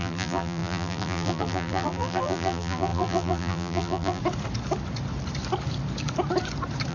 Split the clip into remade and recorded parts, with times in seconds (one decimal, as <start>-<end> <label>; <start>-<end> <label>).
0.0-4.2 remade; 4.2-6.9 recorded